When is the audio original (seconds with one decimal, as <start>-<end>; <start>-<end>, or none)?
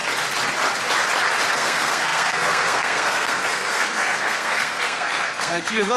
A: 0.0-1.5